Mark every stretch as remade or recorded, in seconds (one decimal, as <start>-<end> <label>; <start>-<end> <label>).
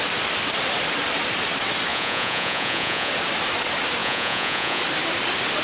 0.0-1.9 recorded; 1.9-3.1 remade; 3.1-4.0 recorded; 4.0-4.8 remade; 4.8-5.6 recorded